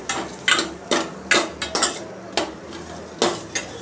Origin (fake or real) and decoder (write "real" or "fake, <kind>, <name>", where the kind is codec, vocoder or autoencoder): real